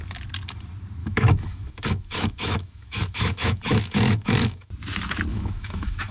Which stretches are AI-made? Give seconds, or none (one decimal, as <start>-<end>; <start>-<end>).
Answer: 1.0-4.7; 5.3-6.1